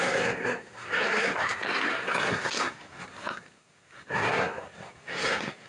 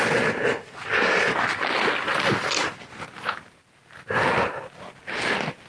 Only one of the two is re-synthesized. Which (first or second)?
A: first